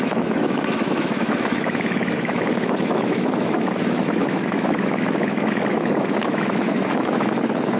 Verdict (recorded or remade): remade